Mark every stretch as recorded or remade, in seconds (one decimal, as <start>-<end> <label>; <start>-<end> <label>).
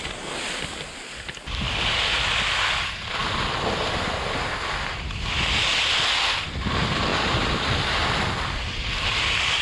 0.0-9.6 recorded